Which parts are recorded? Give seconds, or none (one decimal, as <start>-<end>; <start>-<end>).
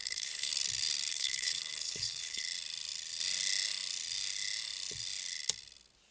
0.5-1.1; 2.4-6.1